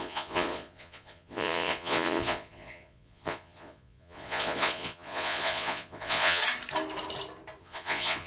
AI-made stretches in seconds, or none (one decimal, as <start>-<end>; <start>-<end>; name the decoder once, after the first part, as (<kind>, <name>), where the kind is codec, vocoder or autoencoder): 0.0-6.4 (vocoder, Vocos); 7.6-8.3